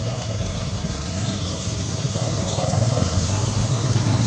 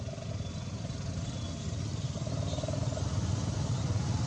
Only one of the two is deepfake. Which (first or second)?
first